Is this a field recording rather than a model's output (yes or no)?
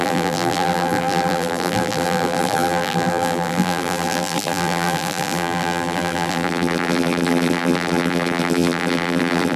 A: no